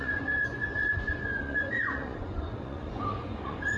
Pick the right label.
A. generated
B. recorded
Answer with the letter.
A